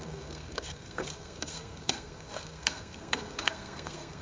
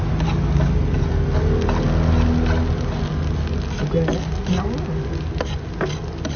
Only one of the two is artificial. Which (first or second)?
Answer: first